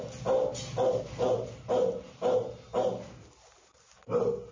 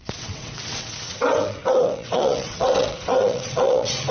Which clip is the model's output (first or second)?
second